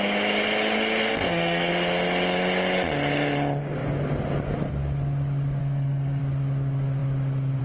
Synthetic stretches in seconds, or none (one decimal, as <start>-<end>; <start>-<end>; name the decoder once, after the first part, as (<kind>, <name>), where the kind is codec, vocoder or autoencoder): 1.1-1.7 (codec, SNAC); 5.6-6.2